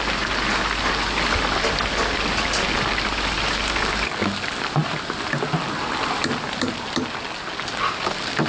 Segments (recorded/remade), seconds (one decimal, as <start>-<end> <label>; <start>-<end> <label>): 0.0-8.5 recorded